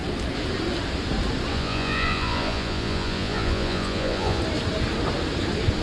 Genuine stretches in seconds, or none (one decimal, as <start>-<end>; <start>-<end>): 0.0-1.5; 4.4-5.8